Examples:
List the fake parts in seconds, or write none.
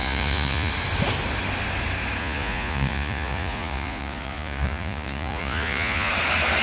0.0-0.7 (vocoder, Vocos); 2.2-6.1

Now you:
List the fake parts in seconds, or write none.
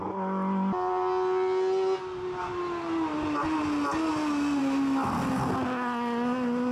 none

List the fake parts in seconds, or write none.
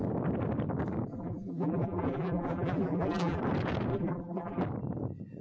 1.1-3.4 (vocoder, BigVGAN v2); 3.9-4.6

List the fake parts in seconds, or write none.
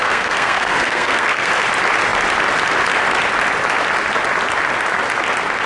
0.0-1.5 (codec, SNAC)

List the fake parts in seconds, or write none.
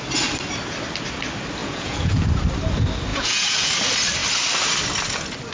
1.6-2.2 (vocoder, Vocos); 3.1-3.7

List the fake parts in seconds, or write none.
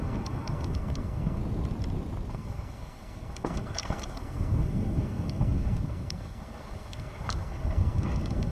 0.0-1.4 (codec, SNAC); 2.3-8.5